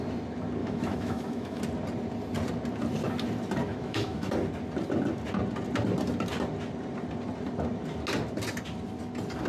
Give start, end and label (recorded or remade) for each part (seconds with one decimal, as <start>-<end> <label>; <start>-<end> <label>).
0.0-0.6 recorded; 0.6-1.6 remade; 1.6-3.7 recorded; 3.7-4.3 remade; 4.3-9.5 recorded